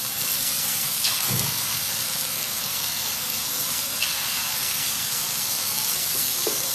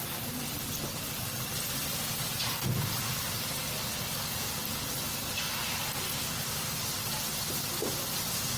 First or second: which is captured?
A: second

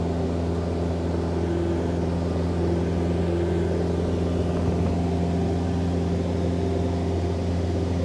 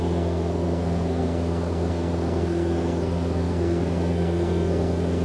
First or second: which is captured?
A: first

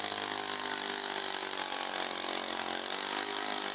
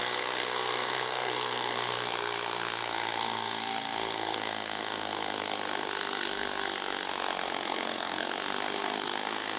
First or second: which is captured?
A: first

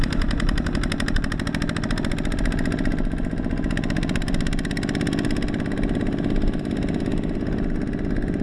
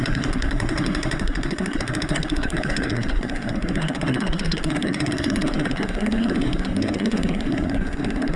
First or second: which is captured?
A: first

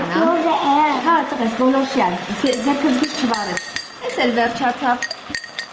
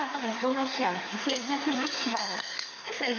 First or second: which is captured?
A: first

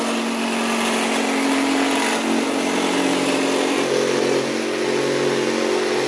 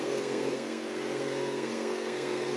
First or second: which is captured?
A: first